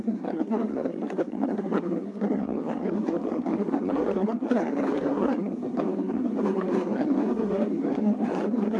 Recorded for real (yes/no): no